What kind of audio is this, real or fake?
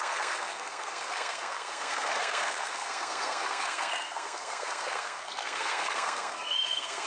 fake